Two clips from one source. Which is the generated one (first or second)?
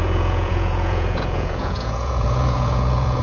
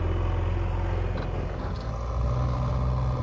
first